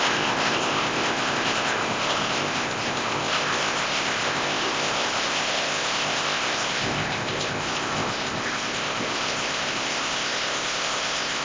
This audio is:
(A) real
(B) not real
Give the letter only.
B